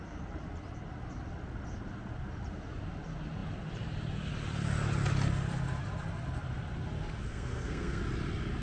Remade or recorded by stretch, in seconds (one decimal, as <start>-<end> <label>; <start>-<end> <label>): 0.0-7.3 recorded; 7.3-8.0 remade; 8.0-8.6 recorded